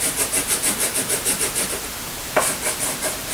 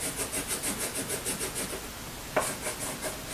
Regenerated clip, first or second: first